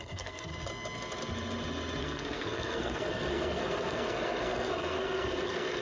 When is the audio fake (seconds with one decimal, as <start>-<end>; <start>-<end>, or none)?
0.0-0.5; 2.0-5.8